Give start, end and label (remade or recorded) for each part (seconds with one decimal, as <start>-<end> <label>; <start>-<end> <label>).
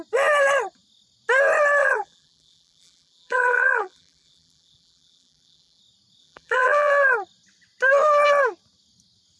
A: 0.0-1.8 recorded; 1.8-5.8 remade; 5.8-6.2 recorded; 6.2-6.9 remade; 6.9-9.4 recorded